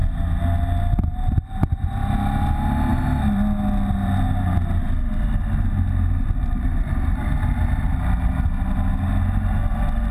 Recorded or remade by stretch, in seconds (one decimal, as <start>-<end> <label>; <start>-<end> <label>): 0.0-10.1 recorded